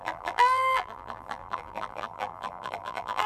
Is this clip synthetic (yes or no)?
yes